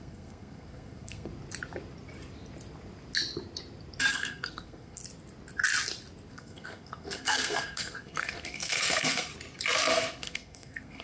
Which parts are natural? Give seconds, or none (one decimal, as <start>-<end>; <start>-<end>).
1.3-4.1; 5.0-6.3; 9.3-9.9